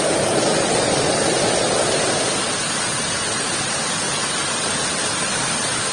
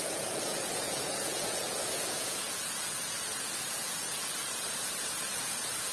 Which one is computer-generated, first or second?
second